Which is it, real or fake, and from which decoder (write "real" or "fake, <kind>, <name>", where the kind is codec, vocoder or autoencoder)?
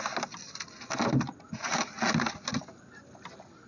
real